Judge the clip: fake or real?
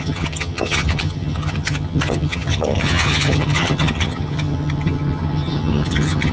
fake